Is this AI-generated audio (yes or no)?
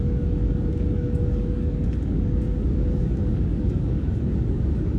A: yes